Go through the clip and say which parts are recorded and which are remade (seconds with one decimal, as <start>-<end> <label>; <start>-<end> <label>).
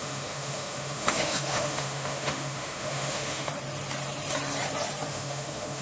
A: 0.0-3.5 remade; 3.5-5.1 recorded; 5.1-5.8 remade